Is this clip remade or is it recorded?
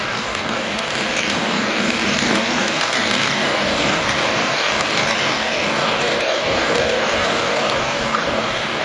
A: remade